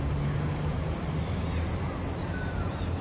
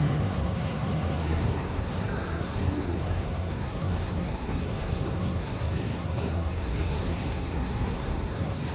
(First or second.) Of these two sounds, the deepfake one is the second